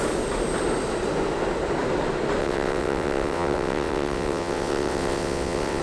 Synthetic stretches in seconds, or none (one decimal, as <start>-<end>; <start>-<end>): 2.4-5.8